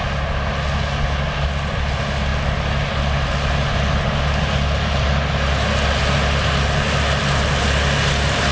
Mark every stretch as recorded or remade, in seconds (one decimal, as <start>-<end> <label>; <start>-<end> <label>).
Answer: 0.0-8.5 recorded

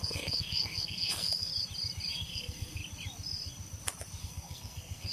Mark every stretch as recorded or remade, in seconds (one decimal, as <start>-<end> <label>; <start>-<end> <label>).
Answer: 0.0-1.5 remade; 1.5-2.1 recorded; 2.1-2.8 remade; 2.8-4.2 recorded; 4.2-5.1 remade

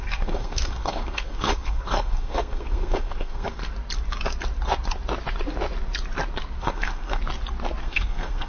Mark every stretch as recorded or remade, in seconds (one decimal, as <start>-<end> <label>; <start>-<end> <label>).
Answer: 0.0-3.6 remade; 3.6-6.6 recorded; 6.6-7.2 remade; 7.2-7.8 recorded; 7.8-8.5 remade

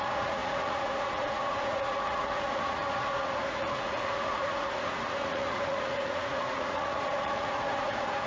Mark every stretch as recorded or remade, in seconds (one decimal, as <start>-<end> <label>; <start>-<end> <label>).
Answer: 0.0-8.3 remade

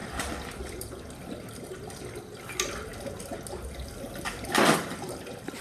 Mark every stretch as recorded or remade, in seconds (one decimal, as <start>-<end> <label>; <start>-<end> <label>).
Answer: 0.0-1.1 remade; 1.1-5.6 recorded

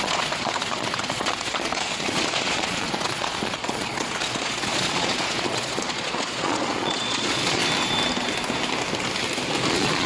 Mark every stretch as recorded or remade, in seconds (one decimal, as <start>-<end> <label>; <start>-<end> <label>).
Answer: 0.0-7.6 remade; 7.6-9.7 recorded; 9.7-10.1 remade